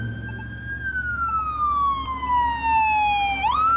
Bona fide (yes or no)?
yes